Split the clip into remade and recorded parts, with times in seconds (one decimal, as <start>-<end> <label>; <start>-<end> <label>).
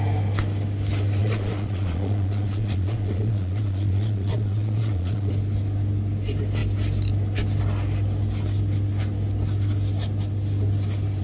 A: 0.0-1.2 recorded; 1.2-5.3 remade; 5.3-11.2 recorded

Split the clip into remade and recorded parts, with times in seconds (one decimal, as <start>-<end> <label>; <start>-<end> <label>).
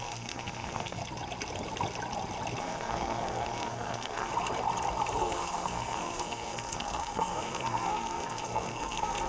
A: 0.0-1.0 remade; 1.0-2.6 recorded; 2.6-4.3 remade; 4.3-5.2 recorded; 5.2-9.3 remade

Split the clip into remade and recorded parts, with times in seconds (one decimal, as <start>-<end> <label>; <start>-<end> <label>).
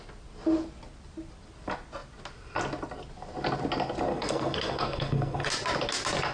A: 0.0-4.1 recorded; 4.1-5.5 remade; 5.5-6.3 recorded